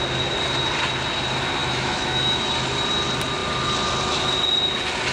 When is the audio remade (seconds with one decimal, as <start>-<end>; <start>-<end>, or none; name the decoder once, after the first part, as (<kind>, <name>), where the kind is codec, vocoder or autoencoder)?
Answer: 1.6-2.5 (autoencoder, DAC-VAE)